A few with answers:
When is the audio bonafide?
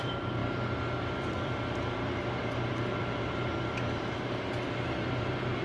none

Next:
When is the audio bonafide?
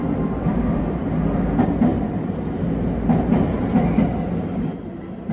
0.0-5.3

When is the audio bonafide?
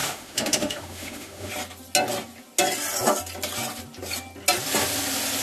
1.5-5.4